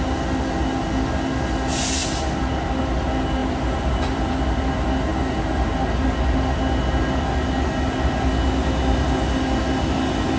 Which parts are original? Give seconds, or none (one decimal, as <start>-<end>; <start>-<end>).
0.0-2.0; 3.0-3.4; 4.4-10.4